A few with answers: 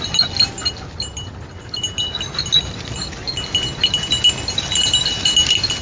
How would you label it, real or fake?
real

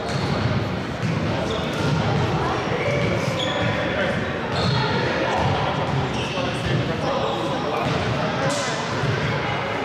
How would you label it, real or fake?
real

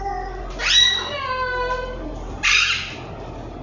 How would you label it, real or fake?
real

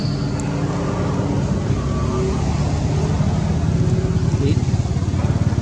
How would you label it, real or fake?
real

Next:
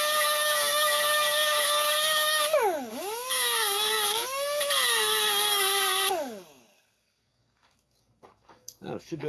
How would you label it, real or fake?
fake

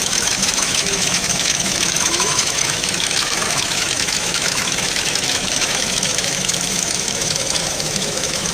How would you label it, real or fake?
fake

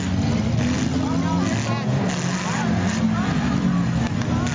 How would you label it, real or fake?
real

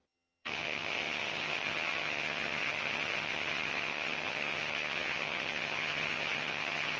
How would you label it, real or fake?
fake